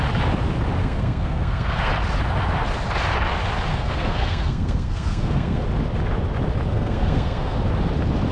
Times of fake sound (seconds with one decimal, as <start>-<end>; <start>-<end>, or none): 0.8-1.9; 3.7-5.6; 6.7-7.6